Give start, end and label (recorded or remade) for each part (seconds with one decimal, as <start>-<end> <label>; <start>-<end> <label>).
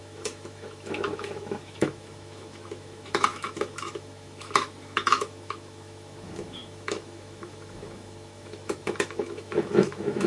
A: 0.0-10.3 remade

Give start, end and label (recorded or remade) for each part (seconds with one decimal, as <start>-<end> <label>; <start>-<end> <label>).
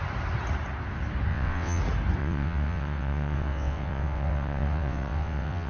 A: 0.0-1.3 recorded; 1.3-1.8 remade; 1.8-2.2 recorded; 2.2-5.7 remade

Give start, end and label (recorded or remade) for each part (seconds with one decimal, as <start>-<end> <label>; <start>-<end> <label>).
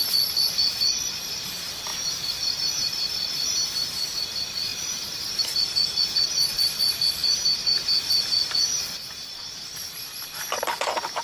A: 0.0-1.1 recorded; 1.1-11.2 remade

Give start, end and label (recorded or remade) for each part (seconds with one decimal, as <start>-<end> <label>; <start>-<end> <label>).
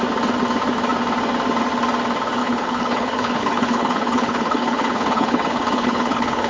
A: 0.0-2.4 recorded; 2.4-6.5 remade